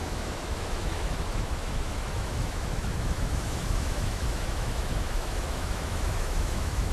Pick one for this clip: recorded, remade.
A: remade